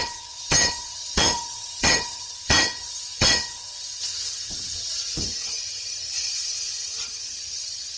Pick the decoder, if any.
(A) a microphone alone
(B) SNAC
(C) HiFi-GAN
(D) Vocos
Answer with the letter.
C